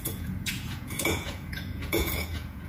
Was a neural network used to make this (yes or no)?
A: yes